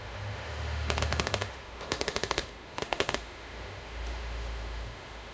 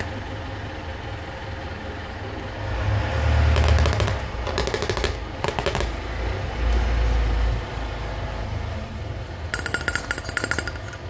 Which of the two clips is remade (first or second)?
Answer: first